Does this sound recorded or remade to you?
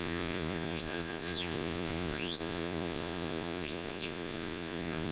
remade